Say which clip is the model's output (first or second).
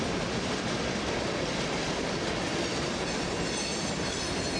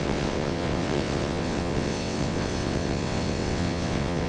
second